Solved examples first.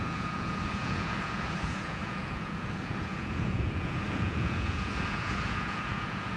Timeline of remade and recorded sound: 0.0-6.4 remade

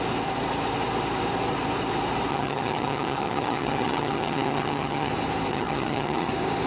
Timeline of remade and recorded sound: 0.0-2.3 recorded; 2.3-5.1 remade; 5.1-5.5 recorded; 5.5-6.3 remade; 6.3-6.7 recorded

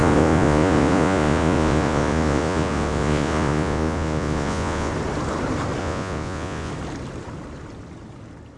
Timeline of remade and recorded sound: 0.0-4.9 remade; 4.9-5.8 recorded; 5.8-6.7 remade; 6.7-8.6 recorded

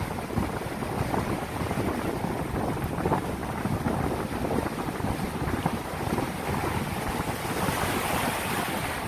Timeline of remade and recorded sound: 0.0-3.4 recorded; 3.4-4.5 remade; 4.5-9.1 recorded

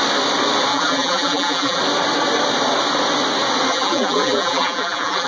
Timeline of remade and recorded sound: 0.0-0.7 recorded; 0.7-1.8 remade; 1.8-3.7 recorded; 3.7-5.3 remade